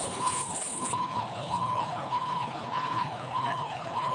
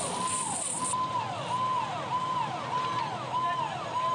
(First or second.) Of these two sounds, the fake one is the first